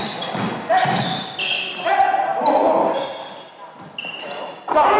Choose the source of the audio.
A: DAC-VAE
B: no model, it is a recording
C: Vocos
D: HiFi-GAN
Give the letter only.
B